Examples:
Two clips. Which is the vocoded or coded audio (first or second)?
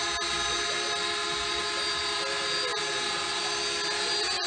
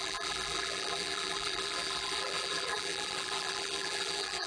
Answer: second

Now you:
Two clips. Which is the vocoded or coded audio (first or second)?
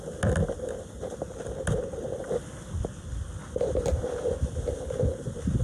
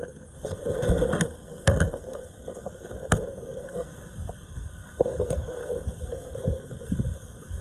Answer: second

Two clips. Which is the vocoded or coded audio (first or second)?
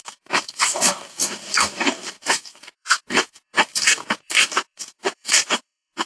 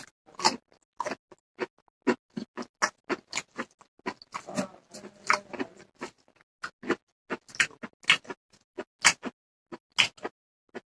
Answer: first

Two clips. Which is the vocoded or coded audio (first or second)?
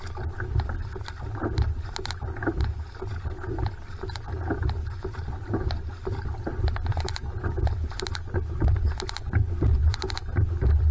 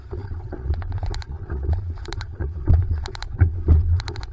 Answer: second